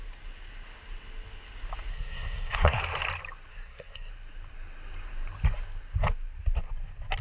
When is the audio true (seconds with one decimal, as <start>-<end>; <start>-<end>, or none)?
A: 0.0-1.9; 2.8-3.5; 4.1-7.2